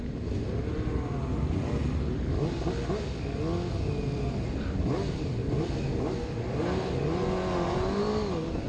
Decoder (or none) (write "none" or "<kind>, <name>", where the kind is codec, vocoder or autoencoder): none